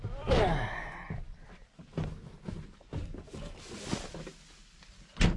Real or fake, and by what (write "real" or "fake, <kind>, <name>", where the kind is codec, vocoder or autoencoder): real